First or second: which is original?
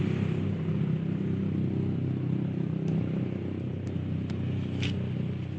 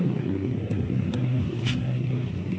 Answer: first